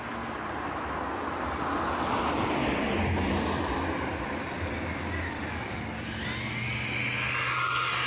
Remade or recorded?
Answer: recorded